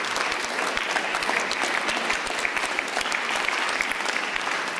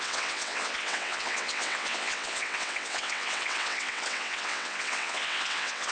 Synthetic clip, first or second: second